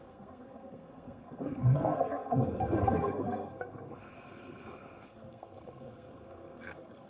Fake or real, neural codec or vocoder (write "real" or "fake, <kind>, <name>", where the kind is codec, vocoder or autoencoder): fake, codec, SNAC